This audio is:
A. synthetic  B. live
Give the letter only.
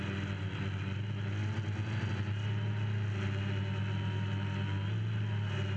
B